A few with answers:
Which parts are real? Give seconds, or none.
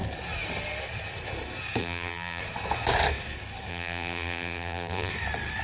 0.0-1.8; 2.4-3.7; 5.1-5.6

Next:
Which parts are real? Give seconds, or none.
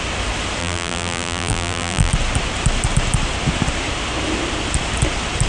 0.0-0.6; 2.1-5.5